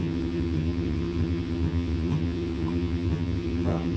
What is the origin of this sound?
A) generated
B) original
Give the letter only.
A